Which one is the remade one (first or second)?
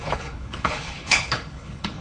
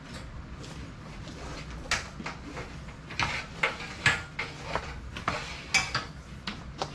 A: first